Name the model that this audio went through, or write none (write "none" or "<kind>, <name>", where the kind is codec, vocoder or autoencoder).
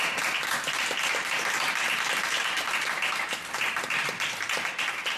none